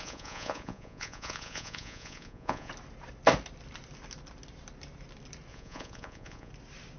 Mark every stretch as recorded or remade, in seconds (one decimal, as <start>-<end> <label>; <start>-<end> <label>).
0.0-2.7 remade; 2.7-5.5 recorded; 5.5-6.5 remade; 6.5-7.0 recorded